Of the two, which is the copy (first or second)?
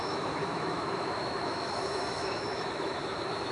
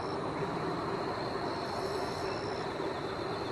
first